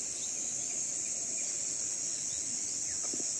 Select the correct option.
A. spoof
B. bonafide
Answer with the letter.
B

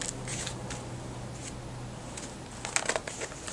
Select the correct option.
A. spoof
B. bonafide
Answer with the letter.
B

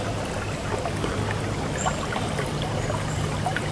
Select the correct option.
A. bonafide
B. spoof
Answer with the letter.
A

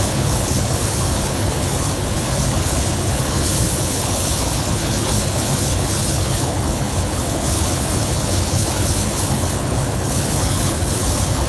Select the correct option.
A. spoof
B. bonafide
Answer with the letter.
A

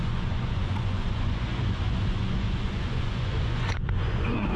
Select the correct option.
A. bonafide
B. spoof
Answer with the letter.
B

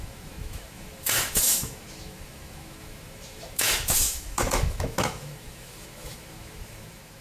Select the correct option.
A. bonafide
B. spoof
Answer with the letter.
B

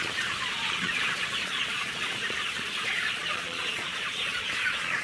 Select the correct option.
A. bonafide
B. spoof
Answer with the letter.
B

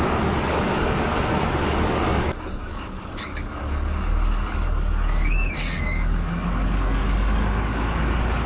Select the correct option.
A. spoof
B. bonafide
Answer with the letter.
A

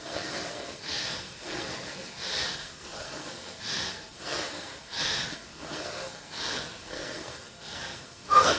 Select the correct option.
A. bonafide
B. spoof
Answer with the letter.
B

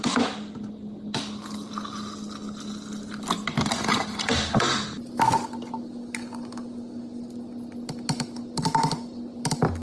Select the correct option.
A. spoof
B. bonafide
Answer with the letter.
B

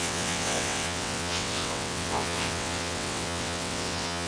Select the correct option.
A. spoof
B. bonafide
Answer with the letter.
A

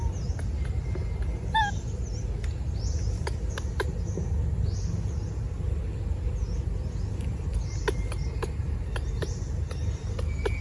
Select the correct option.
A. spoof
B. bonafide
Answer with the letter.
B